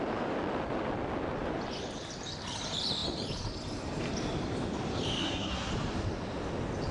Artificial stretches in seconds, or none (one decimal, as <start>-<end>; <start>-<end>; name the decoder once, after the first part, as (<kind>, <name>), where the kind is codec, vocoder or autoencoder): 5.2-5.7 (codec, SNAC)